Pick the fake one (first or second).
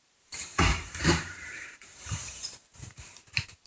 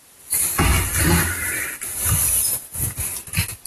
first